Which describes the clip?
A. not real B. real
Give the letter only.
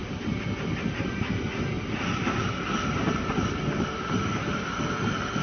B